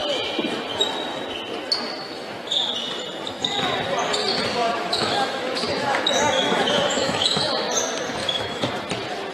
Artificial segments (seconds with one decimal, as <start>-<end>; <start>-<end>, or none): 4.6-7.5; 8.2-8.7